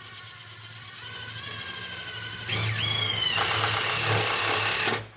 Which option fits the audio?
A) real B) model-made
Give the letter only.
A